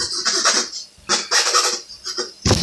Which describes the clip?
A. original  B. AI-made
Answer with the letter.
A